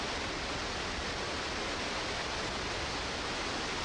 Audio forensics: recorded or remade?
recorded